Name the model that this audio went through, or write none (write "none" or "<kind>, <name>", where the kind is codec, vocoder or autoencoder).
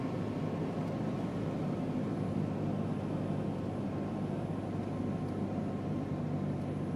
none